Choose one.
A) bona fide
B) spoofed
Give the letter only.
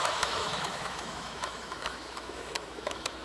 B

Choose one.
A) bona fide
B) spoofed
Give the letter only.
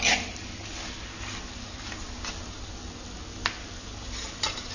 A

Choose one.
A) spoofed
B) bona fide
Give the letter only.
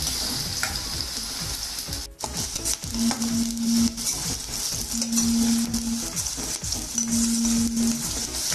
B